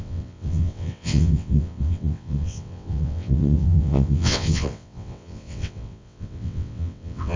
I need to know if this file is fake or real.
fake